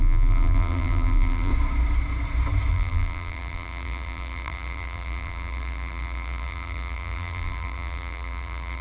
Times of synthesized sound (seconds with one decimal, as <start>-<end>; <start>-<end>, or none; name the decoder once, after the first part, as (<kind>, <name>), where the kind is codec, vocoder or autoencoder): 0.0-1.5 (vocoder, BigVGAN v2); 2.7-8.8